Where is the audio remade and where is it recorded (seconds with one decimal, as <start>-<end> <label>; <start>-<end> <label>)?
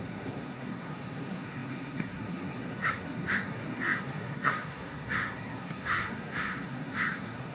0.0-7.5 remade